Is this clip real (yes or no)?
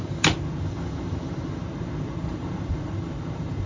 no